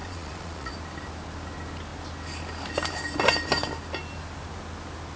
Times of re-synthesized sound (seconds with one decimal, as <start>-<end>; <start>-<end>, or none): 0.0-0.7